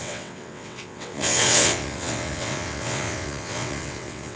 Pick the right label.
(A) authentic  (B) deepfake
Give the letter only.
B